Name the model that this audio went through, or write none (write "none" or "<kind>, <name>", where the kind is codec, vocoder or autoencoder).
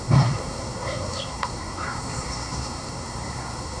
codec, SNAC